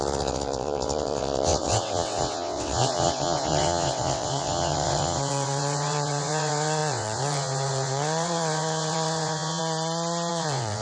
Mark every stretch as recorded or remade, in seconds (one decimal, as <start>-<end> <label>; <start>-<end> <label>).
0.0-9.6 remade; 9.6-10.3 recorded; 10.3-10.8 remade